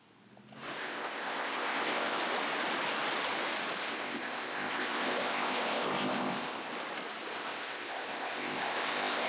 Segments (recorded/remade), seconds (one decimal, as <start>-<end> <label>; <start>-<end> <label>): 0.0-0.8 recorded; 0.8-2.2 remade; 2.2-3.8 recorded; 3.8-6.7 remade; 6.7-7.3 recorded; 7.3-9.3 remade